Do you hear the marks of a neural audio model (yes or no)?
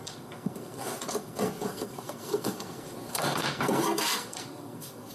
yes